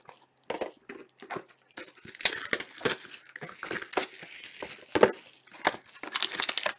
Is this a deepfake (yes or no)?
no